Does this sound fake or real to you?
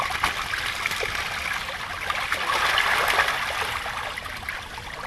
real